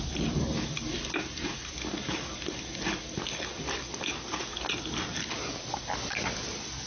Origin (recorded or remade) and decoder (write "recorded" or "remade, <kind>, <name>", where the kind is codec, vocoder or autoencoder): recorded